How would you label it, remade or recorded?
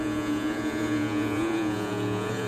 remade